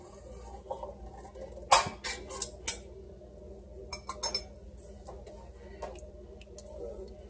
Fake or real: real